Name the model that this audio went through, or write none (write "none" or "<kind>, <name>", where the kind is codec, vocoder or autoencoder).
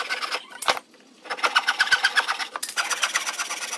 none